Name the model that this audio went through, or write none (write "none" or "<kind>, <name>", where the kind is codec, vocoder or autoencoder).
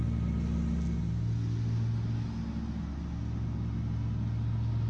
none